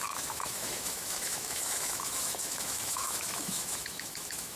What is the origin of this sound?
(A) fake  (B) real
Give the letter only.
A